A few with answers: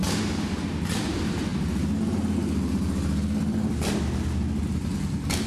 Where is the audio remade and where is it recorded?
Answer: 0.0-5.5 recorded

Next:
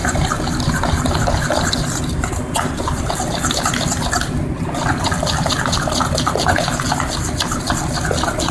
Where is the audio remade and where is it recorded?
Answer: 0.0-8.5 recorded

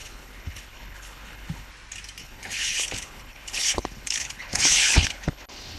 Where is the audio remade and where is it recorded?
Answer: 0.0-1.7 remade; 1.7-2.2 recorded; 2.2-5.8 remade

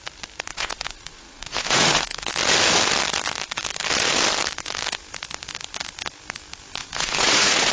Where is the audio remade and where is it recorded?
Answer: 0.0-0.5 recorded; 0.5-2.3 remade; 2.3-6.8 recorded; 6.8-7.7 remade